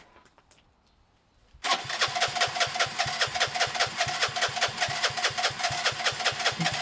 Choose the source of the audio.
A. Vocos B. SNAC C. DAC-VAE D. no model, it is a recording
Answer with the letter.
D